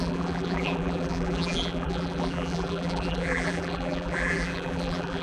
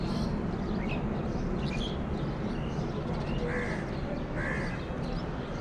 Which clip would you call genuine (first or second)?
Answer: second